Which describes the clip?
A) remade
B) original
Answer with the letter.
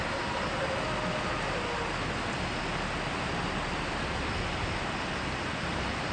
B